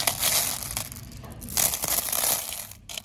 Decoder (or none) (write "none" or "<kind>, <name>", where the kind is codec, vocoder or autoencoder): none